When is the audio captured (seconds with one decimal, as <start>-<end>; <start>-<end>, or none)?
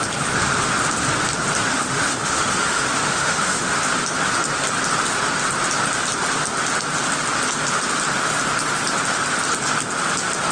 0.0-1.7; 3.8-10.5